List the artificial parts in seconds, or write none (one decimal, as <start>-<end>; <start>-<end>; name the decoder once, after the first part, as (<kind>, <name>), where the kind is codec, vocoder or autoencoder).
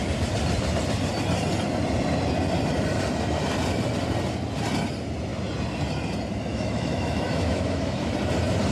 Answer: 6.5-8.1 (autoencoder, DAC-VAE)